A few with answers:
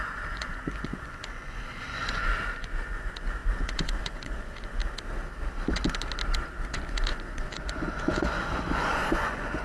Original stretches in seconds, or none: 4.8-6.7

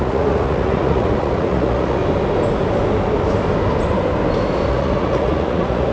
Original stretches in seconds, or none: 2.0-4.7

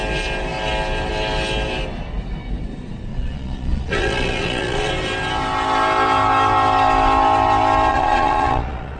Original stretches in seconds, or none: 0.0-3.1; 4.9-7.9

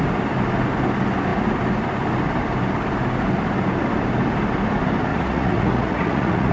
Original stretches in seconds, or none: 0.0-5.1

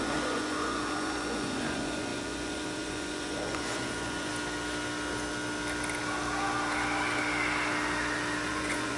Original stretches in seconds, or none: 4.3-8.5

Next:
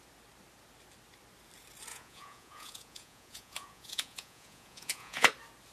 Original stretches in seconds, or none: 0.0-1.9; 5.3-5.7

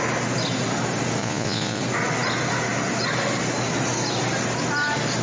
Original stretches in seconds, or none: 0.0-1.2; 1.8-5.2